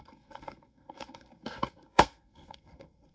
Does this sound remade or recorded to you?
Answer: remade